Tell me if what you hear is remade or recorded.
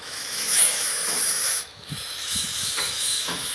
remade